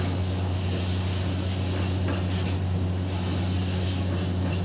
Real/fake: real